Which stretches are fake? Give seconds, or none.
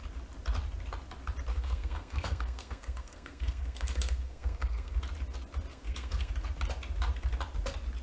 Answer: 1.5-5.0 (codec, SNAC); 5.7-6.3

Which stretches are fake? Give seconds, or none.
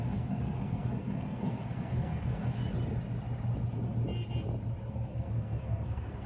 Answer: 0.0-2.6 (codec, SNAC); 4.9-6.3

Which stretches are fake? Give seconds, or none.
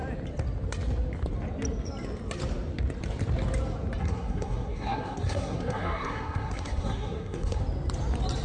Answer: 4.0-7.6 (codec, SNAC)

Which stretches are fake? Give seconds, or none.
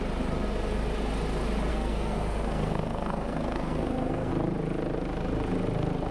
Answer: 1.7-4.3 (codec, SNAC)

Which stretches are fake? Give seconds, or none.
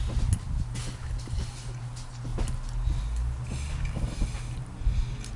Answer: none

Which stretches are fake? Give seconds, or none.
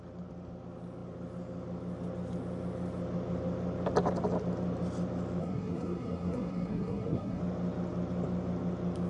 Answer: 5.4-7.4 (codec, SNAC)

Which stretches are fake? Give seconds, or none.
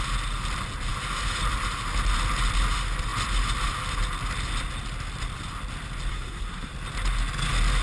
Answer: 6.1-6.7 (codec, SNAC)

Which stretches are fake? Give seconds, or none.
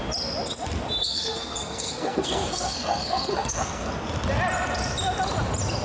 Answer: 1.0-3.9 (codec, SNAC)